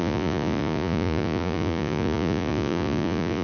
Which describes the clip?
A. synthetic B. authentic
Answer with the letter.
A